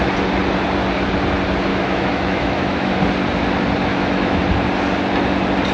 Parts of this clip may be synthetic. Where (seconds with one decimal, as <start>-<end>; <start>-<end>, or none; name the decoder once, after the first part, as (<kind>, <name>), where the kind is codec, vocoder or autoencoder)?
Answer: 1.7-3.0 (autoencoder, DAC-VAE); 3.9-4.4